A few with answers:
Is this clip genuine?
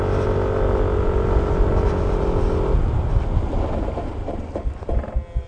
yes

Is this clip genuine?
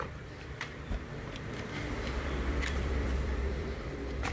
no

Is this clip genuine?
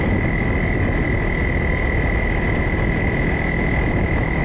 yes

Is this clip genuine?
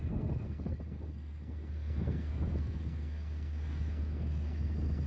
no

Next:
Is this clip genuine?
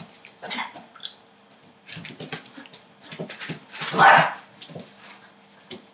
yes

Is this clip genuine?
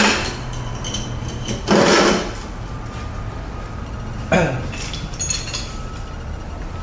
yes